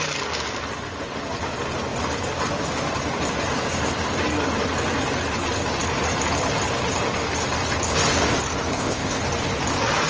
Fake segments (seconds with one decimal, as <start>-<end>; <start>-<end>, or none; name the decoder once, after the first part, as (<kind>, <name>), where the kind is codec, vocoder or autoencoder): 8.7-9.2 (codec, ZipCodec)